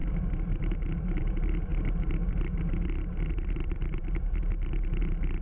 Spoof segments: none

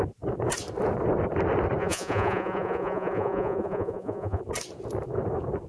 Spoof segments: 1.8-4.4

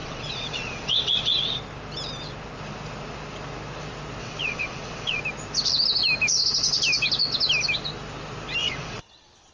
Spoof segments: 0.0-1.6; 4.2-5.2; 8.6-9.5

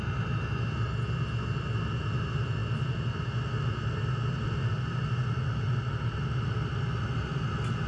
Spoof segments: none

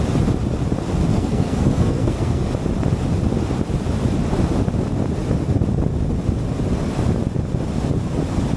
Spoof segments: 1.1-2.5